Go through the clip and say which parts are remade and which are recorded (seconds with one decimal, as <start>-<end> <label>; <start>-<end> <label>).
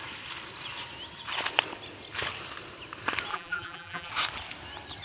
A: 0.0-3.3 recorded; 3.3-4.1 remade; 4.1-5.0 recorded